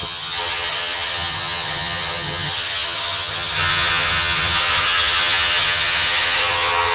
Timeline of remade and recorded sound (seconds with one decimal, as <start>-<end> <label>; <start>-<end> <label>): 0.0-6.9 remade